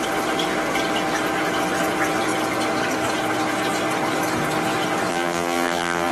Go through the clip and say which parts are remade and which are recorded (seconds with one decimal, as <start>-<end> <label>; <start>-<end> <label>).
0.0-5.1 recorded; 5.1-6.1 remade